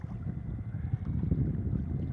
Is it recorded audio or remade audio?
recorded